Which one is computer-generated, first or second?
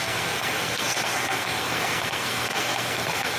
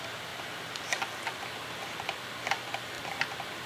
first